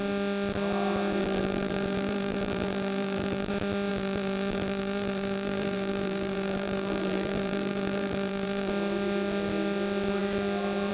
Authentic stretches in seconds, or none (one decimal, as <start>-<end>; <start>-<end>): 0.0-1.2; 3.5-3.9; 8.7-10.9